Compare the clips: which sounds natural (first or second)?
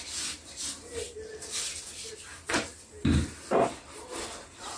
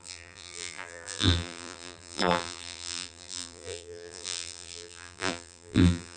first